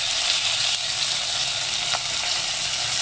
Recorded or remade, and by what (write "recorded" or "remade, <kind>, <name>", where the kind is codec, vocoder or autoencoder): recorded